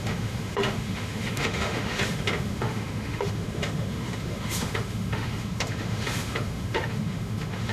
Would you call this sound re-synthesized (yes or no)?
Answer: yes